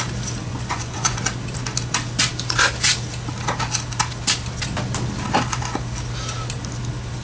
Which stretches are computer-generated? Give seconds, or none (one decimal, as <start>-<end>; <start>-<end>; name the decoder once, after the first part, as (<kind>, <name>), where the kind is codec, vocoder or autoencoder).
0.4-1.2 (vocoder, Vocos)